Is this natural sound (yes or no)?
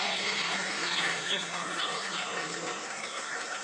no